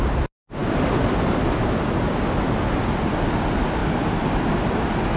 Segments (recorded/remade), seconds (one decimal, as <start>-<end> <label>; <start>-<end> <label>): 0.0-5.2 recorded